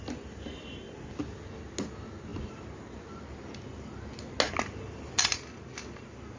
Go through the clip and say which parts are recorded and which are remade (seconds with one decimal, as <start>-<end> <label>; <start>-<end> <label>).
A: 0.0-6.4 recorded